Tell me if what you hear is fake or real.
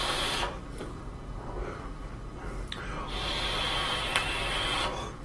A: real